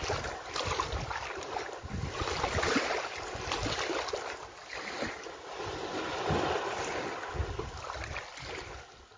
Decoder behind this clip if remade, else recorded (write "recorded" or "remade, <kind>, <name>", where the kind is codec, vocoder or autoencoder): recorded